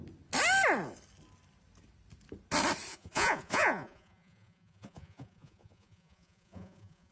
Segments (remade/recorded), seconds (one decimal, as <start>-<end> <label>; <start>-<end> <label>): 0.0-2.9 recorded; 2.9-7.1 remade